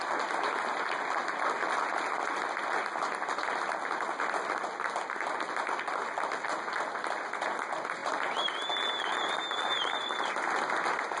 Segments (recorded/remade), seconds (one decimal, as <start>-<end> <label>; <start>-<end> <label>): 0.0-11.2 recorded